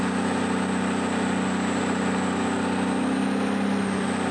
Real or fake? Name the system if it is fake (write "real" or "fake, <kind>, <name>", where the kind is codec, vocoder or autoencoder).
real